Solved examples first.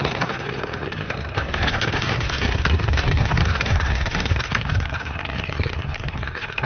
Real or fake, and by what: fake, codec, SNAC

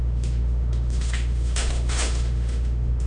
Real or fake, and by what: fake, autoencoder, DAC-VAE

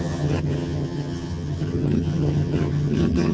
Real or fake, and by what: fake, vocoder, HiFi-GAN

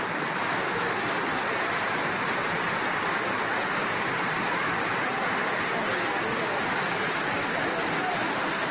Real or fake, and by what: real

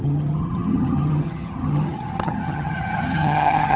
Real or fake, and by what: fake, vocoder, HiFi-GAN